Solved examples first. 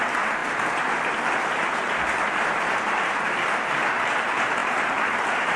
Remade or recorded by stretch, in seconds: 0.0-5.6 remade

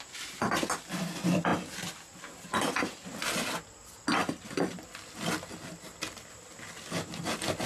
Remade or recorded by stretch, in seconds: 0.0-7.7 recorded

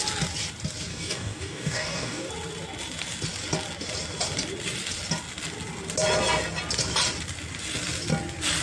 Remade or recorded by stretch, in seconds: 0.0-0.9 recorded; 0.9-2.3 remade; 2.3-8.6 recorded

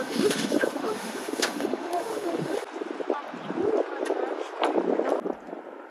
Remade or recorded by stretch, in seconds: 0.0-2.6 remade; 2.6-5.9 recorded

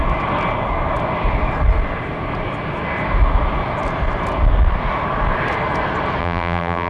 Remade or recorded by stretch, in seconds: 0.0-6.2 recorded; 6.2-6.9 remade